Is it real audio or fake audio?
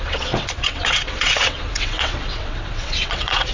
fake